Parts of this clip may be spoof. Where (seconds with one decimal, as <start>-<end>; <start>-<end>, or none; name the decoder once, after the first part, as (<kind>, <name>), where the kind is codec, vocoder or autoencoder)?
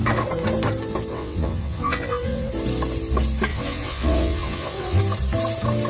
1.1-2.5 (vocoder, WaveNeXt); 3.5-5.0